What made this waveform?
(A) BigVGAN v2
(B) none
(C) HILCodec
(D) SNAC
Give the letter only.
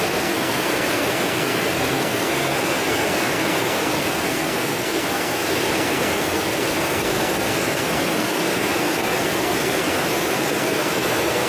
D